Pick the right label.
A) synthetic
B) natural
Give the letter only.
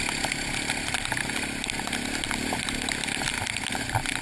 B